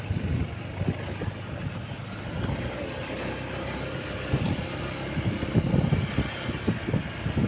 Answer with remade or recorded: recorded